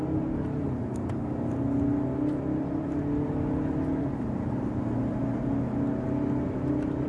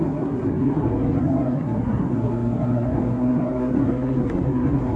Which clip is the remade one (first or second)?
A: second